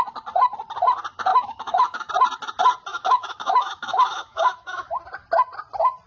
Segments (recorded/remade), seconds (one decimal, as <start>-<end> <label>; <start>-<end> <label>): 0.0-1.3 recorded; 1.3-2.1 remade; 2.1-2.9 recorded; 2.9-4.9 remade; 4.9-6.1 recorded